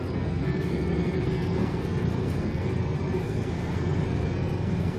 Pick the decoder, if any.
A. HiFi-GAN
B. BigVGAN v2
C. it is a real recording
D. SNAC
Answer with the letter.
D